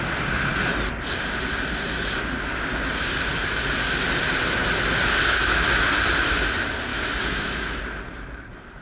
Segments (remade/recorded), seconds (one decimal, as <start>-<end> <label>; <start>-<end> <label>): 0.0-6.9 recorded; 6.9-7.8 remade; 7.8-8.8 recorded